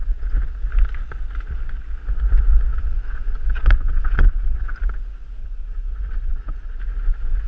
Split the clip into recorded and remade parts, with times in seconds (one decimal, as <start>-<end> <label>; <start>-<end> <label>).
0.0-2.7 recorded; 2.7-4.7 remade; 4.7-5.4 recorded; 5.4-6.8 remade; 6.8-7.5 recorded